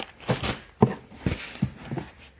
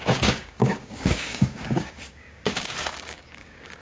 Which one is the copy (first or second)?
second